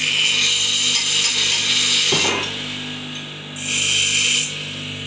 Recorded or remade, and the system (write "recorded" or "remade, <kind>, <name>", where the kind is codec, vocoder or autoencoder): recorded